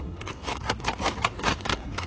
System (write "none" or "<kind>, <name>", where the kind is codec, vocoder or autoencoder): codec, SNAC